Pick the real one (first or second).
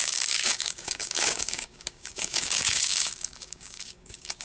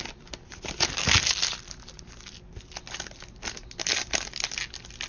second